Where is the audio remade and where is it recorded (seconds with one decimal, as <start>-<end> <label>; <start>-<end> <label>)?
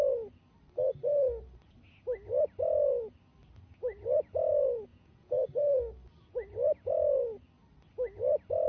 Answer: 0.0-4.9 recorded; 4.9-5.5 remade; 5.5-8.7 recorded